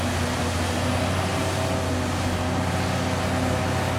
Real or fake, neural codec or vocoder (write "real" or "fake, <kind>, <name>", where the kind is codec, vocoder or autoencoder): real